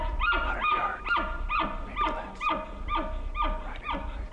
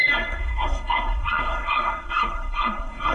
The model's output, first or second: second